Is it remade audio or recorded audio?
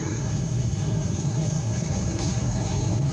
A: remade